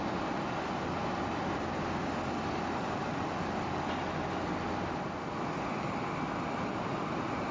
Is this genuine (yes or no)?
yes